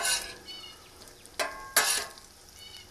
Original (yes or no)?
yes